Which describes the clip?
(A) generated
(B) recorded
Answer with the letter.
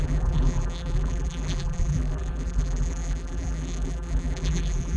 A